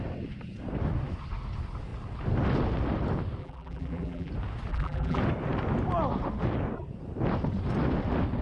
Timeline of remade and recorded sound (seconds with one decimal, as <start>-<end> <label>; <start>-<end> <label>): 0.0-3.4 recorded; 3.4-4.3 remade; 4.3-4.7 recorded; 4.7-5.2 remade; 5.2-8.4 recorded

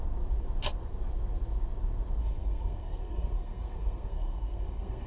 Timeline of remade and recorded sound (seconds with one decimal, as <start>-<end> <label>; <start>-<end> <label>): 0.0-2.2 recorded; 2.2-5.1 remade